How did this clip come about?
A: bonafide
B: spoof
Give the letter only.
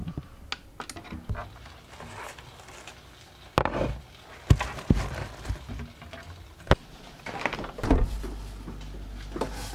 A